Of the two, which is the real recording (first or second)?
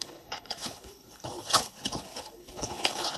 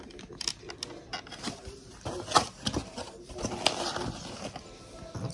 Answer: second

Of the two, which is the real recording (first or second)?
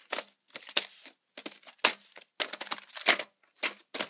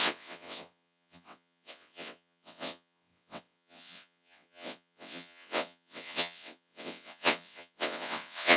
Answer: first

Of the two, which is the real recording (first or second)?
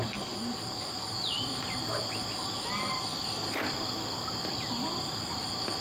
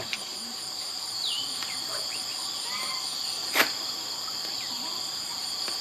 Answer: first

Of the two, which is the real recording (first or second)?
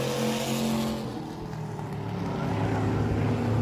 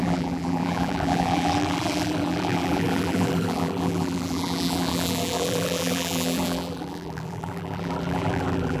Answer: first